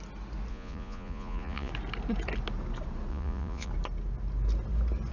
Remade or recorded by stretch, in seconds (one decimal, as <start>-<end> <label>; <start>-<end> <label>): 0.0-0.5 recorded; 0.5-1.7 remade; 1.7-3.1 recorded; 3.1-3.7 remade; 3.7-5.1 recorded